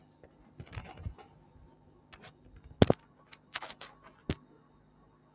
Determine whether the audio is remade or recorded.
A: recorded